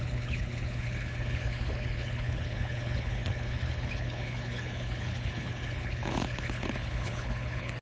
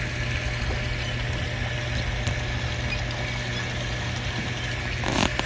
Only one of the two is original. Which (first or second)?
second